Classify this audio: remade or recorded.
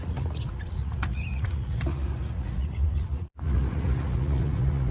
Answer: remade